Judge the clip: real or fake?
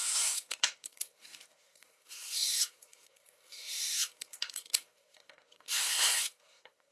fake